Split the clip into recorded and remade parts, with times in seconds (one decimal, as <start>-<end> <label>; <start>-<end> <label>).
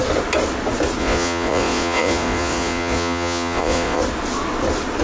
0.0-1.0 recorded; 1.0-4.0 remade; 4.0-5.0 recorded